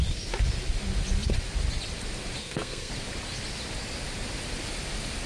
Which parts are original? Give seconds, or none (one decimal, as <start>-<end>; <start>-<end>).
0.0-2.4; 2.9-5.3